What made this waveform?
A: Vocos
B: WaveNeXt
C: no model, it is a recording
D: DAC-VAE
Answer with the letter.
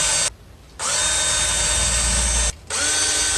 C